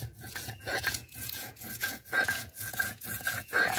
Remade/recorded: remade